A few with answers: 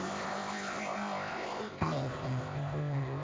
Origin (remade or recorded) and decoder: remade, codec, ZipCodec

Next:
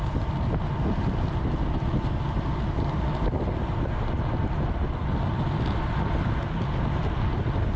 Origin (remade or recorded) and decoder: recorded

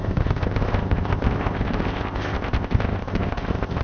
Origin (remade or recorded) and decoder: remade, codec, ZipCodec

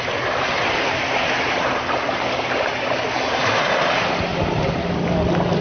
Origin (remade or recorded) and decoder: recorded